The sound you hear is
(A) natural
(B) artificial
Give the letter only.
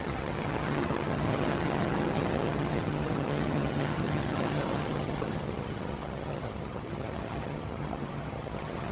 B